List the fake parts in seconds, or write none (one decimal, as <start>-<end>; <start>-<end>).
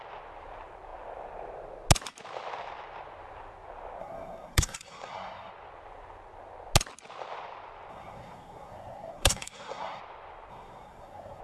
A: 4.0-5.5; 7.9-10.0; 10.5-11.4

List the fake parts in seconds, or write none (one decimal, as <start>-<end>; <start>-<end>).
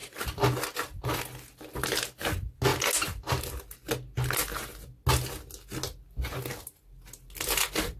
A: none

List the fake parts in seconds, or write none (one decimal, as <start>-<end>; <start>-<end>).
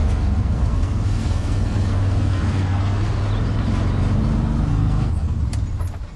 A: 0.0-3.2; 4.7-5.4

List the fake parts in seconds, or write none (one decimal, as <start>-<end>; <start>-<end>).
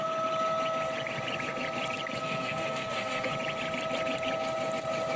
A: 2.2-3.3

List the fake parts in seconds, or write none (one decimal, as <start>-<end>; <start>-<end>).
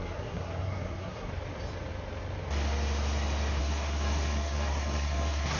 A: 0.0-1.3; 3.6-5.6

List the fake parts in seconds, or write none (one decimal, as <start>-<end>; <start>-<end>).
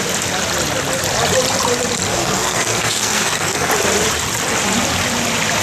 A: 2.1-3.7